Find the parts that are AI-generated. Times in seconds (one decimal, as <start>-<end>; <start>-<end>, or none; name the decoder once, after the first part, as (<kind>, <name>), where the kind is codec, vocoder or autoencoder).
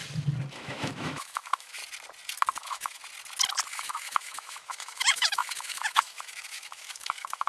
0.5-1.8 (autoencoder, DAC-VAE); 2.6-3.0; 3.7-7.5